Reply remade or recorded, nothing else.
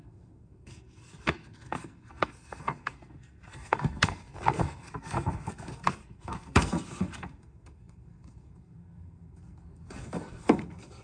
remade